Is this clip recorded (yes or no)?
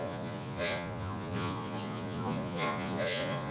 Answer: no